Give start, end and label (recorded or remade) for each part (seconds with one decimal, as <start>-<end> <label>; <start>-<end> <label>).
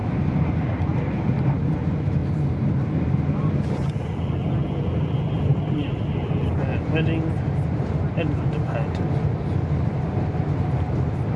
0.0-1.5 remade; 1.5-11.4 recorded